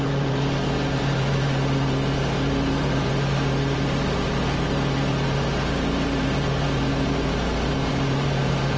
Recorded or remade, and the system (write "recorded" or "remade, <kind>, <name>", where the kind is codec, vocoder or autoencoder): remade, vocoder, BigVGAN v2